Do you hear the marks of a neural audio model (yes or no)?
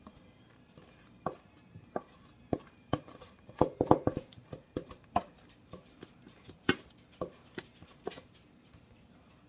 yes